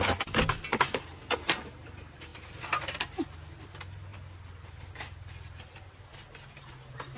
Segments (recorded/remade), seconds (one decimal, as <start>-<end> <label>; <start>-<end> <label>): 0.0-7.2 recorded